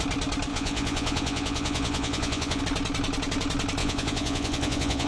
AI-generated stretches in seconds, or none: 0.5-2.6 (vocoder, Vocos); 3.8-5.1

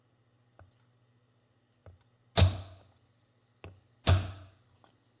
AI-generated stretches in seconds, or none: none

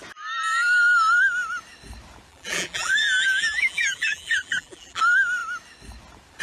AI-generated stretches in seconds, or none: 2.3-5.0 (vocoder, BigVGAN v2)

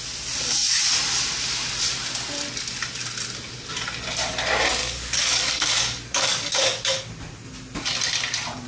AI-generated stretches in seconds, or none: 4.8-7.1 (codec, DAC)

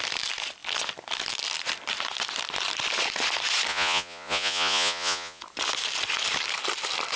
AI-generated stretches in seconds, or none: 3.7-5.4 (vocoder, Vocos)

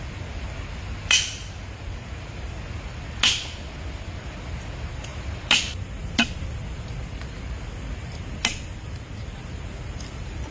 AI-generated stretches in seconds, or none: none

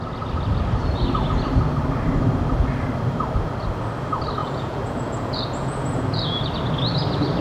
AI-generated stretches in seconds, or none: 4.4-6.5 (vocoder, Vocos)

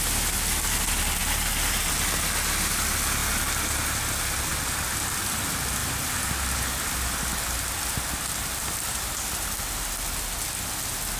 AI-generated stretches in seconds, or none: 5.8-6.9 (vocoder, BigVGAN v2)